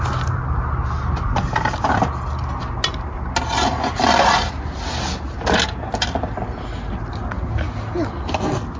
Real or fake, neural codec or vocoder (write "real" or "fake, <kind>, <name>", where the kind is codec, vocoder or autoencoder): real